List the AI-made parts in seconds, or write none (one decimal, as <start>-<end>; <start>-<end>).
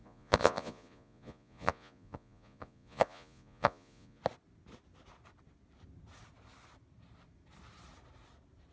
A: 0.0-4.2